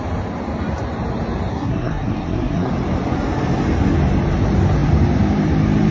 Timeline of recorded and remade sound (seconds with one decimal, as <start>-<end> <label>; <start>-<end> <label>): 0.0-1.5 recorded; 1.5-2.7 remade; 2.7-5.9 recorded